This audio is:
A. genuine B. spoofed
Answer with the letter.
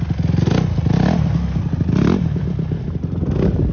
A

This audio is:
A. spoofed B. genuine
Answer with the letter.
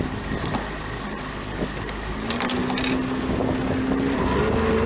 B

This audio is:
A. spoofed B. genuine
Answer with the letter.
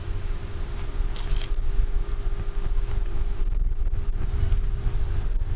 B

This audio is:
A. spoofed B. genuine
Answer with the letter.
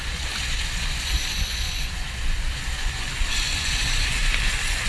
A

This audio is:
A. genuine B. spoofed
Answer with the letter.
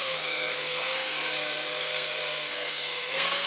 B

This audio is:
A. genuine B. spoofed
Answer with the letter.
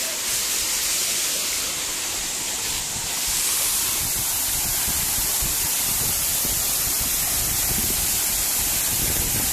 A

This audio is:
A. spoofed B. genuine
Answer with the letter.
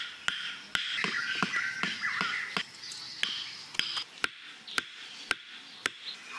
B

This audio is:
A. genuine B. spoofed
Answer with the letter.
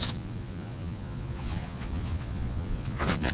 B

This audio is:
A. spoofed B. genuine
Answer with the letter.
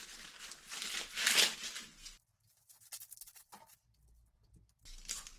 B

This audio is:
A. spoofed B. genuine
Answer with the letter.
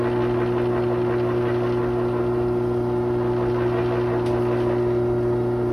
B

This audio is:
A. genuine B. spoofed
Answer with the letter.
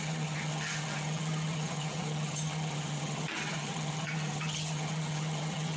B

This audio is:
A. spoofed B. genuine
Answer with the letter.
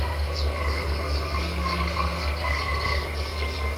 A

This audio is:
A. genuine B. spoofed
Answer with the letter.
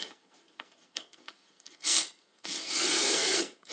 B